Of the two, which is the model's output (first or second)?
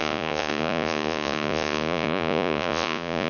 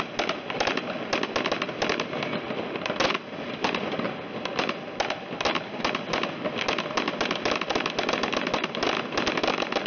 first